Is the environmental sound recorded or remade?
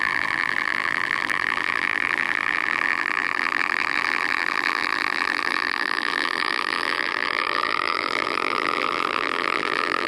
remade